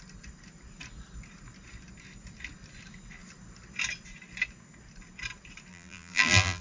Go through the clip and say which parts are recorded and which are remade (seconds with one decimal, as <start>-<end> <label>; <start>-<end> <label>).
0.0-5.7 recorded; 5.7-6.6 remade